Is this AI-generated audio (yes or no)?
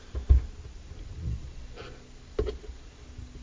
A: no